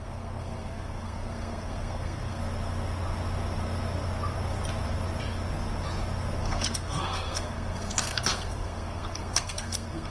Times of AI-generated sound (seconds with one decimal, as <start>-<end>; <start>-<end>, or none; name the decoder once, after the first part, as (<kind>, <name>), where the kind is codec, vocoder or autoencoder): 0.0-2.4 (codec, SNAC); 6.4-10.1